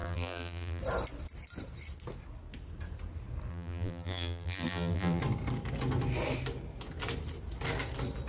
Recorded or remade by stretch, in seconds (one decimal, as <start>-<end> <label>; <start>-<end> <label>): 0.0-0.8 remade; 0.8-3.5 recorded; 3.5-5.2 remade; 5.2-8.3 recorded